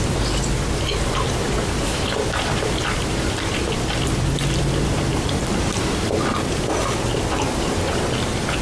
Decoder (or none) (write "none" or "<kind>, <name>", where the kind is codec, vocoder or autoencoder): vocoder, BigVGAN v2